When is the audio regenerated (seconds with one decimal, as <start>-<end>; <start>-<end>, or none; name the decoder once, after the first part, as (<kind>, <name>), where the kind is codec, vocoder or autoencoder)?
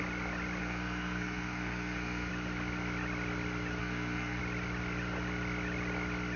0.6-2.3 (codec, SNAC); 3.8-4.4